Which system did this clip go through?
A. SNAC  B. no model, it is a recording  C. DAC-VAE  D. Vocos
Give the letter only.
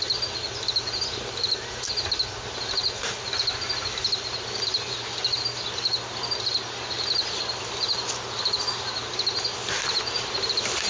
B